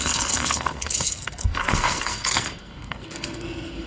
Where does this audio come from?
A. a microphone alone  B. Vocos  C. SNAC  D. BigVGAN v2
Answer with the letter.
C